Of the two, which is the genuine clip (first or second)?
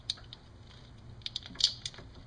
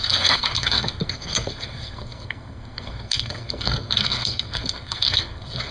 first